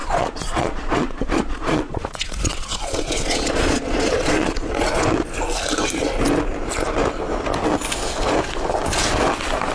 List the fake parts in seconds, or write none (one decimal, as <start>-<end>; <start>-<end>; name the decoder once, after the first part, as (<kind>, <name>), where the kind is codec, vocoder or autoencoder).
0.0-4.8 (vocoder, Vocos)